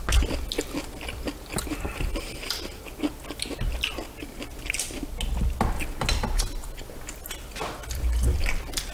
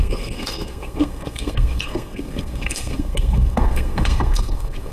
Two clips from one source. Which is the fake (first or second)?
second